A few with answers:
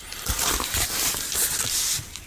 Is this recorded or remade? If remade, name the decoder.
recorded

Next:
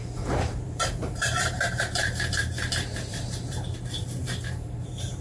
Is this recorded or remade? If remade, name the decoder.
remade, vocoder, BigVGAN v2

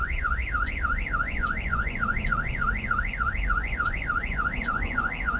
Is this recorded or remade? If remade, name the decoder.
remade, vocoder, Vocos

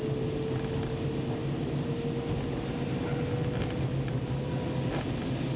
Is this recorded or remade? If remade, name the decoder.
recorded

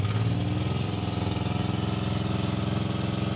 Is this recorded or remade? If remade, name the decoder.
recorded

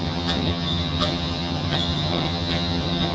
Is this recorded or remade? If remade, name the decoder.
remade, vocoder, HiFi-GAN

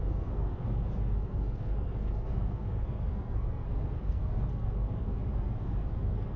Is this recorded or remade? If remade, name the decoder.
remade, codec, SNAC